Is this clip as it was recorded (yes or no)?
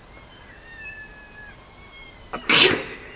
yes